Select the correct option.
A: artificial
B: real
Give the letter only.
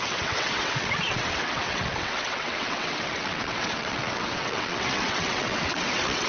A